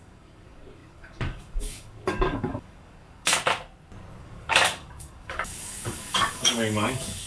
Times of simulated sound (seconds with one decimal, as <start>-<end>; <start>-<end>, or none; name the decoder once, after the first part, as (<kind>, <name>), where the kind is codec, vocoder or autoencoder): 0.0-3.3 (codec, DAC); 4.2-7.3